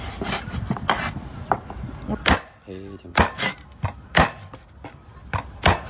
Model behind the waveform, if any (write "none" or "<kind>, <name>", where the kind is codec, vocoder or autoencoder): none